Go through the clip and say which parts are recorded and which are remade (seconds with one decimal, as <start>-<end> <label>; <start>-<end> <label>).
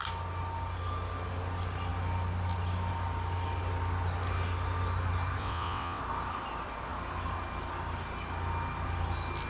0.0-5.4 recorded; 5.4-6.0 remade; 6.0-9.5 recorded